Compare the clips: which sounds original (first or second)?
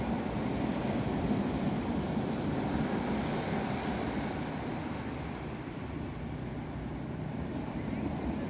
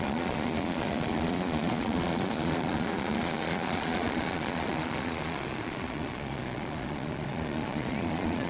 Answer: first